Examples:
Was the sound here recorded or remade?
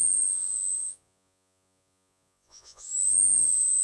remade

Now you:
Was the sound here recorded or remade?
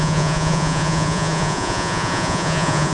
remade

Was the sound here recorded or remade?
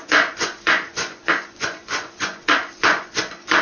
remade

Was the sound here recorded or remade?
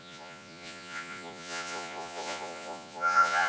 remade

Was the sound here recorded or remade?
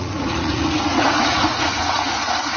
remade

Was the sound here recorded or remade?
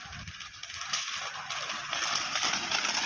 recorded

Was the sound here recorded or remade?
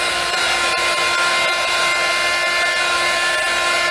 recorded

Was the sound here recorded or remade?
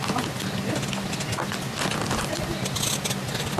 recorded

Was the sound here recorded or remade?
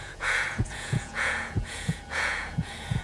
remade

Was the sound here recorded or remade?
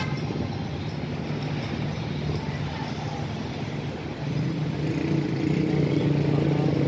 recorded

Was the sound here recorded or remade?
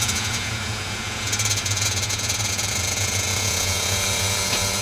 remade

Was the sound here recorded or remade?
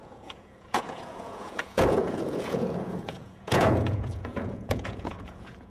remade